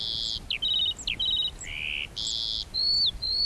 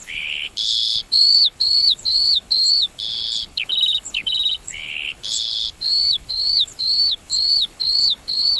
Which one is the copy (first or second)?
second